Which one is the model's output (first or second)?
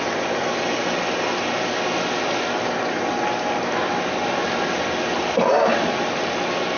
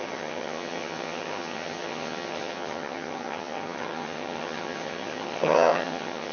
second